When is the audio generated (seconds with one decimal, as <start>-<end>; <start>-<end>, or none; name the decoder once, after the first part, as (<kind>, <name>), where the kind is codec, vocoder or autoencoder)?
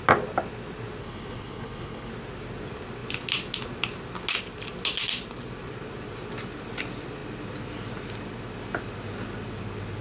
1.0-2.1 (codec, HILCodec)